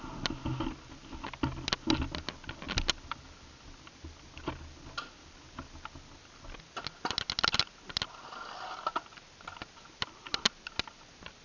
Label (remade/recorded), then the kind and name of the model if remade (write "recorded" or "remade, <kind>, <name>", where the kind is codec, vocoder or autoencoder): recorded